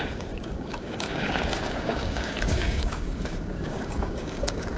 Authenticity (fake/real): fake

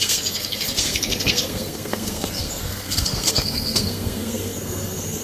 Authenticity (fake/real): fake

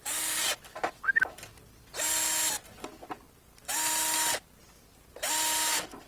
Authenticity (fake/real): real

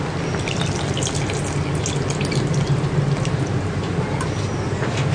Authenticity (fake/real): real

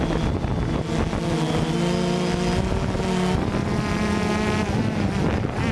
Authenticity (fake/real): real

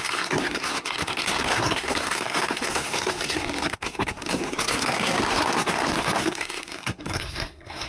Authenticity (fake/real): fake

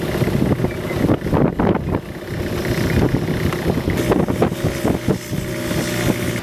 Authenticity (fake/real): real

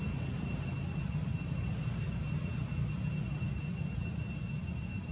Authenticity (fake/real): real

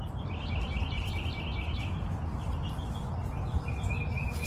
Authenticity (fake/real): real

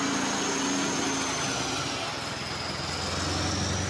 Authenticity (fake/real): real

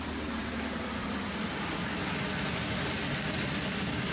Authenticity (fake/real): real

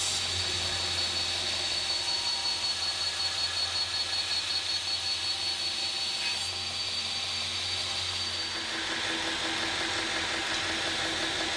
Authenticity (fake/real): real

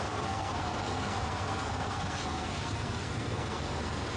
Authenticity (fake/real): fake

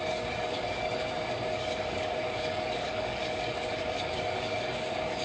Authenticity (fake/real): fake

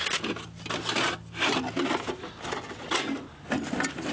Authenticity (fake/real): real